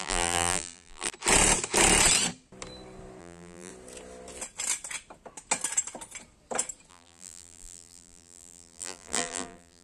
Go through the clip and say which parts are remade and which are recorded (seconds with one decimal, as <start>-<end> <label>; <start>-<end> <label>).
0.0-1.1 remade; 1.1-3.2 recorded; 3.2-3.7 remade; 3.7-6.9 recorded; 6.9-9.8 remade